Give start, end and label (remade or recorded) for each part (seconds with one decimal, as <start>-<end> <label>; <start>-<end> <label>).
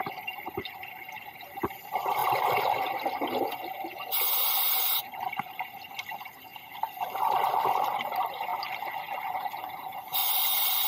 0.0-2.2 recorded; 2.2-5.3 remade; 5.3-10.2 recorded; 10.2-10.9 remade